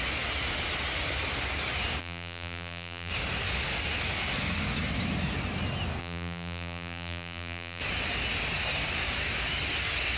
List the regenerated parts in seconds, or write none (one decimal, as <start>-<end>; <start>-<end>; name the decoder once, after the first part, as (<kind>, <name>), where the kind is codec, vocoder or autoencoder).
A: 2.0-3.1 (vocoder, BigVGAN v2); 6.0-7.8